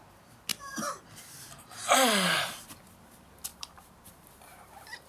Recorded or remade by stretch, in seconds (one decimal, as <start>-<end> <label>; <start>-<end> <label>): 0.0-0.5 recorded; 0.5-2.5 remade; 2.5-3.5 recorded; 3.5-4.1 remade; 4.1-4.5 recorded; 4.5-5.1 remade